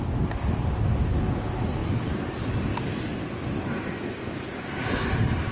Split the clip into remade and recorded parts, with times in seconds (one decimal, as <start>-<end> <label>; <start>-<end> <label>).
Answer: 0.0-5.5 recorded